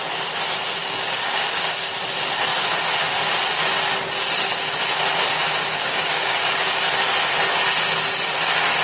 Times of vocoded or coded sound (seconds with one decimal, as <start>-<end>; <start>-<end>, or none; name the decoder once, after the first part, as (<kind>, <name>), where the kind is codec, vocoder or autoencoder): 0.8-1.6 (codec, DAC); 5.6-6.7